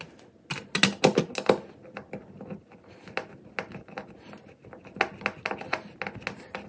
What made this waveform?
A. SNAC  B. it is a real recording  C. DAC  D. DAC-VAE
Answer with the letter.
B